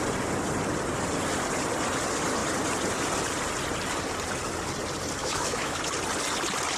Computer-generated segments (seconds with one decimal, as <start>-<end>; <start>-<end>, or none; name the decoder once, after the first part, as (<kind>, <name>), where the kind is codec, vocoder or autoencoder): 5.2-5.8 (autoencoder, DAC-VAE)